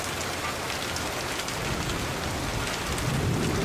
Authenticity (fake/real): real